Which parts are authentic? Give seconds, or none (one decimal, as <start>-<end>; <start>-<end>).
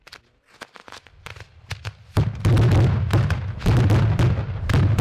0.0-5.0